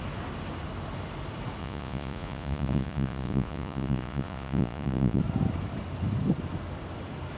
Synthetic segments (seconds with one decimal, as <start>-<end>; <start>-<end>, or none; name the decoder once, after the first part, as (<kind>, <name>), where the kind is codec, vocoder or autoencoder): 1.6-5.2 (vocoder, Vocos)

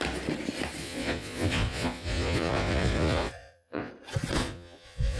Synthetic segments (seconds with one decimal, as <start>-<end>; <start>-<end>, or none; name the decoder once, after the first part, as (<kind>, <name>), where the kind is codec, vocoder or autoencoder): 0.8-3.9 (vocoder, Vocos); 4.4-5.2

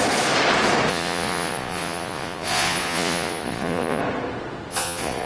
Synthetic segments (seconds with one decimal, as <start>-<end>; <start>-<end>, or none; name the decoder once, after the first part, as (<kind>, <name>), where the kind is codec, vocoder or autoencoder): 0.9-4.0 (vocoder, Vocos); 4.7-5.3

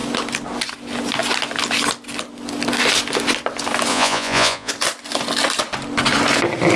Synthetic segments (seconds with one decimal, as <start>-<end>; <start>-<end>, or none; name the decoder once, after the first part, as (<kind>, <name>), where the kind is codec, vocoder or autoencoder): 3.9-4.7 (vocoder, Vocos)

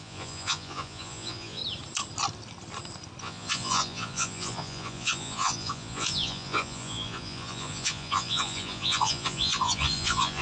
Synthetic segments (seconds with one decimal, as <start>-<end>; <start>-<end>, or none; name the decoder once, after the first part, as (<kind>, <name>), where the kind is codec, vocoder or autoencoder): 0.0-1.6 (vocoder, Vocos); 3.2-10.4

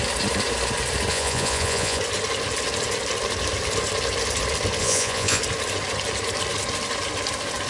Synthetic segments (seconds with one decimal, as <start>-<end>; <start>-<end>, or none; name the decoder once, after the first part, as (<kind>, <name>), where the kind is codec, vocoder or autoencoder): 1.1-2.0 (vocoder, Vocos); 4.8-5.4

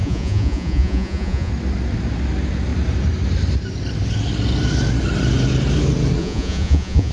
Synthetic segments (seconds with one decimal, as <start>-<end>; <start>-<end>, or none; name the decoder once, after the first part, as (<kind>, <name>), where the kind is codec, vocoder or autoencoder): 0.0-1.5 (vocoder, Vocos); 6.2-7.1

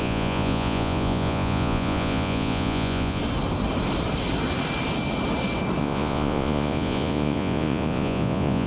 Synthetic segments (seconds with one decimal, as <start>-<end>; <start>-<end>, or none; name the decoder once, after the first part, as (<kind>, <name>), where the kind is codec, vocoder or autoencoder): 0.0-3.2 (vocoder, Vocos); 5.8-8.7